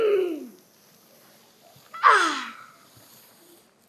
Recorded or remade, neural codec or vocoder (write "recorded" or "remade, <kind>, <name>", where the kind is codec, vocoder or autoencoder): recorded